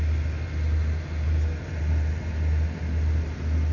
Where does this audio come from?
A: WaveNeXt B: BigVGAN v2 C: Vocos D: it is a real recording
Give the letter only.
D